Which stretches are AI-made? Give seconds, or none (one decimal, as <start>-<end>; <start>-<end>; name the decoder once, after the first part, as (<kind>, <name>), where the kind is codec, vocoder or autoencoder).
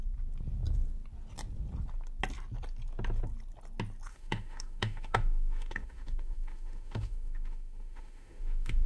4.1-8.9 (autoencoder, DAC-VAE)